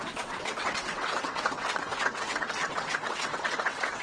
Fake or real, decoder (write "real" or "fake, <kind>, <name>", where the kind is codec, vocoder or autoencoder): fake, vocoder, WaveNeXt